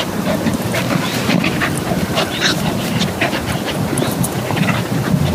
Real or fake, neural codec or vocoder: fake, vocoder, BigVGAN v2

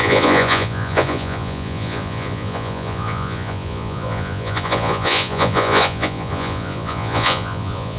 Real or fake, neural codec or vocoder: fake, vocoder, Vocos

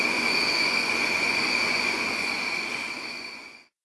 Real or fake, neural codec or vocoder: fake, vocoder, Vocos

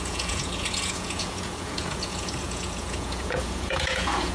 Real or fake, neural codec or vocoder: fake, vocoder, Vocos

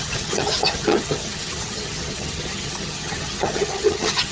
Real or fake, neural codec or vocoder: fake, vocoder, HiFi-GAN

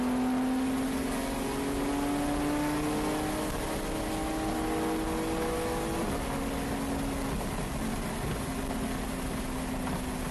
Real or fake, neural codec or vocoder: real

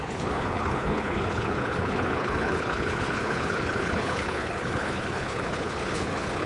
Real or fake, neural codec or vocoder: fake, codec, HILCodec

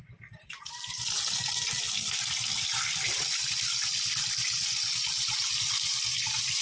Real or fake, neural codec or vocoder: real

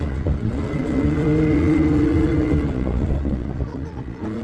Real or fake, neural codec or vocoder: fake, vocoder, Vocos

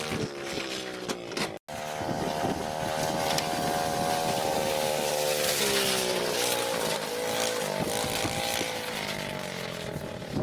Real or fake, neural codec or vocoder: real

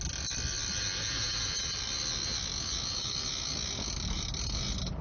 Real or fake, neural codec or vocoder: real